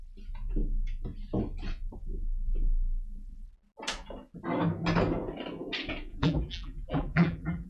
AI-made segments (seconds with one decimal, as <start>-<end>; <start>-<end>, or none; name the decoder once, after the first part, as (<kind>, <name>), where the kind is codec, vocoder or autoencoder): 6.1-7.7 (vocoder, BigVGAN v2)